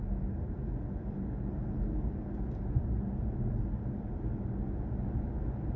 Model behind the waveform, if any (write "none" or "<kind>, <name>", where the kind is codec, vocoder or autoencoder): none